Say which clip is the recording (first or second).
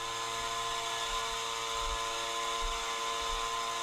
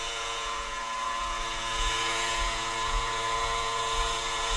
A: first